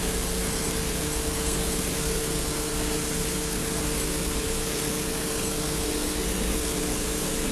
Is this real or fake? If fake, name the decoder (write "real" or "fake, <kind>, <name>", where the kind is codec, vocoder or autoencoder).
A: fake, codec, SNAC